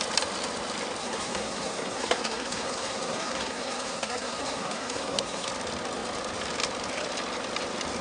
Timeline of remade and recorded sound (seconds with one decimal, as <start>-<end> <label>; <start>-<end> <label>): 0.0-1.0 recorded; 1.0-5.5 remade; 5.5-8.0 recorded